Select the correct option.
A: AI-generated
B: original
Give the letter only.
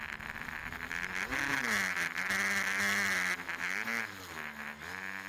B